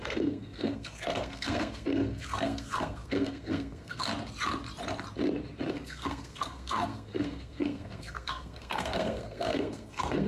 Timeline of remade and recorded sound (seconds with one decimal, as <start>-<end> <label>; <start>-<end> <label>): 0.0-4.1 remade; 4.1-5.7 recorded; 5.7-10.3 remade